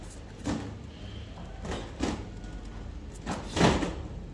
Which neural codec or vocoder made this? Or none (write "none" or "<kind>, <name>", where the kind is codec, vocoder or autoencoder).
none